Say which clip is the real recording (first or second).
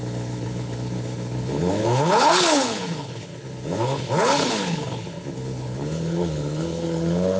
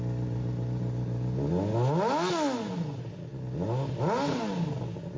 second